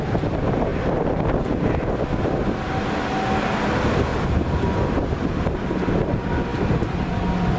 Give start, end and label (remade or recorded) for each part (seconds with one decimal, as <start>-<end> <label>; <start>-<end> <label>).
0.0-7.6 recorded